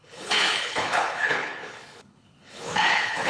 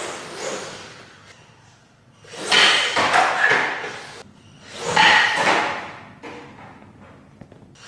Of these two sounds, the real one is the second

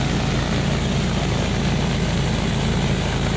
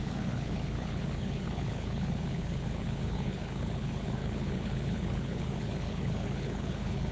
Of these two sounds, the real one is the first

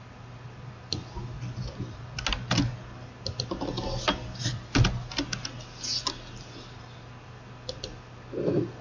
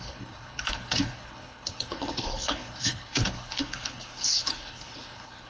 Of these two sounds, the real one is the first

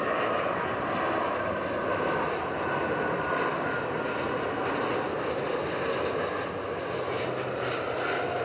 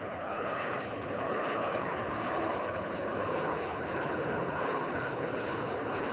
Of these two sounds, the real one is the first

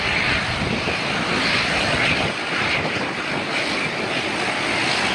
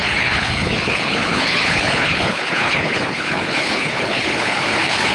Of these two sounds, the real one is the first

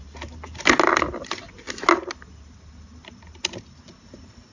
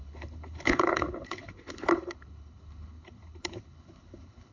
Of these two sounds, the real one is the first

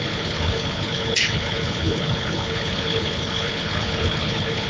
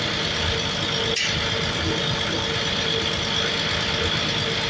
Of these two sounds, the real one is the second